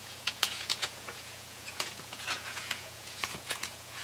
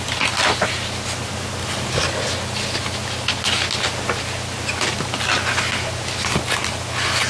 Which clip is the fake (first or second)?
first